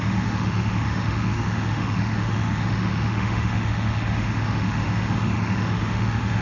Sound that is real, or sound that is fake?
fake